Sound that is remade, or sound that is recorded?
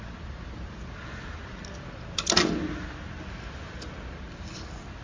remade